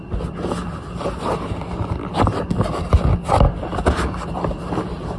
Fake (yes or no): no